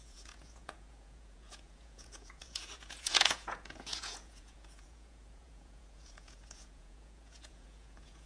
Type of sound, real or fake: fake